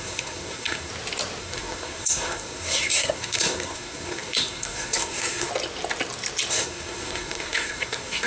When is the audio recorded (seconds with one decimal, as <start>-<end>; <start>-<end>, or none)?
0.9-1.4; 5.5-6.5